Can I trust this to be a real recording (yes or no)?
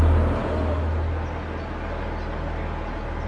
yes